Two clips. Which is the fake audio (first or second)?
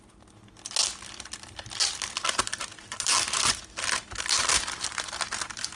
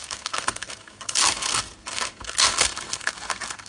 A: second